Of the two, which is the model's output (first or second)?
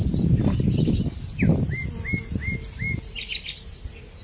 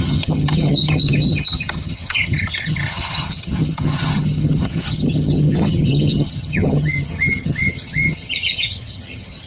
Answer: second